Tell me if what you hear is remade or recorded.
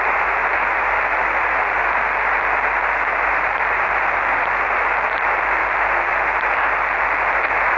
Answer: recorded